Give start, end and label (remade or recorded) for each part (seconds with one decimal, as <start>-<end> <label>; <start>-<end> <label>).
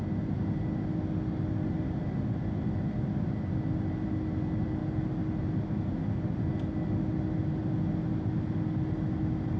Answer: 0.0-9.6 recorded